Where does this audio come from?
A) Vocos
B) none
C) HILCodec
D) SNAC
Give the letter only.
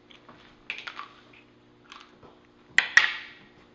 B